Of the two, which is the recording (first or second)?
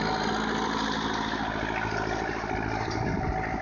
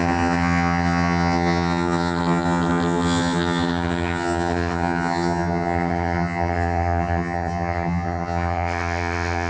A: first